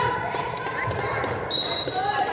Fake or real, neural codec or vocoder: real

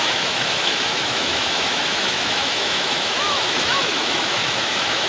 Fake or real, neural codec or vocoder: fake, autoencoder, DAC-VAE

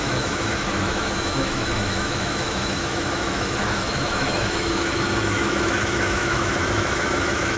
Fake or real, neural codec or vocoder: fake, autoencoder, DAC-VAE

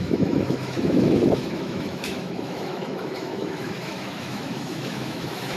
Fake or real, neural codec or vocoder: fake, autoencoder, DAC-VAE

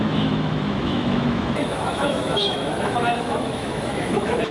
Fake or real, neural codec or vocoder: fake, autoencoder, DAC-VAE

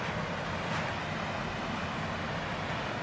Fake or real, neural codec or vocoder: real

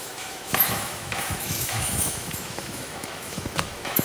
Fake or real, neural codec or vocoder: fake, autoencoder, DAC-VAE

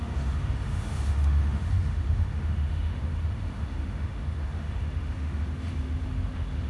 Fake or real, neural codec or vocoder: fake, autoencoder, DAC-VAE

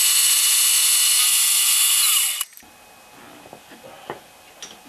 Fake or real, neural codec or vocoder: real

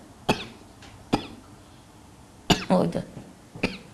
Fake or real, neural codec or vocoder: real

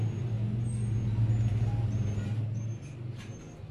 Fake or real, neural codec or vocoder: real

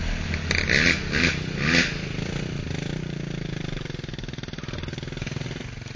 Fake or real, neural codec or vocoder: real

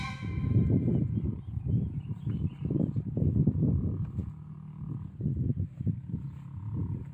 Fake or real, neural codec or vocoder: real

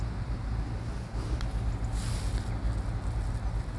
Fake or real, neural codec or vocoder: real